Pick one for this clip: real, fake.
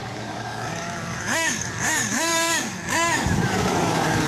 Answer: fake